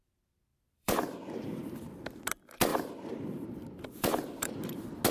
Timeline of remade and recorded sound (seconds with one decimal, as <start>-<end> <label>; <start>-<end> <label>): 0.0-0.5 recorded; 0.5-1.8 remade; 1.8-2.7 recorded; 2.7-4.5 remade; 4.5-5.1 recorded